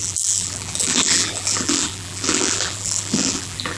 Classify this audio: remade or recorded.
remade